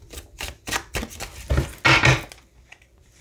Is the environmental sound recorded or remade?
recorded